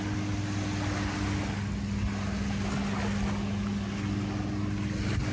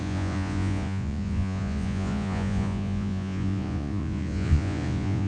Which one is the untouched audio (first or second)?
first